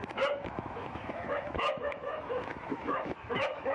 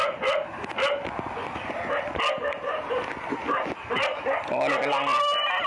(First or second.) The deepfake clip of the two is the first